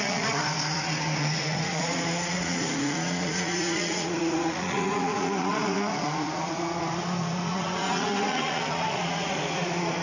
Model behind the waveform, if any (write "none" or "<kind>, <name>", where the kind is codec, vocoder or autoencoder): vocoder, Vocos